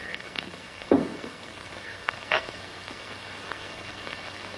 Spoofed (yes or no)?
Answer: yes